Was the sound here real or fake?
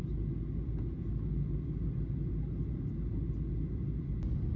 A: real